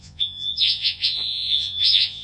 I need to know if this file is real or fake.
fake